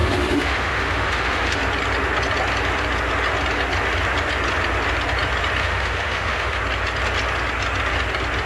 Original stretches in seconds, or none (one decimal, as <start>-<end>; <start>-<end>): 1.6-5.6; 6.6-8.5